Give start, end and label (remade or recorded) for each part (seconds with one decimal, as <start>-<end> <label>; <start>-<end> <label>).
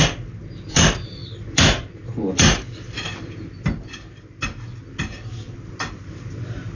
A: 0.0-6.8 recorded